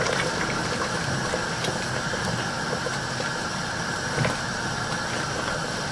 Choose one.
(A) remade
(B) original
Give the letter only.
A